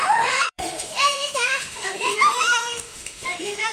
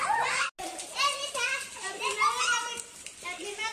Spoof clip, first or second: first